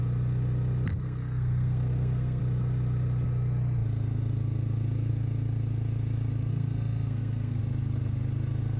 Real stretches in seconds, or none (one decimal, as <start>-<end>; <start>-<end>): 0.0-0.9; 2.4-6.5; 7.6-8.8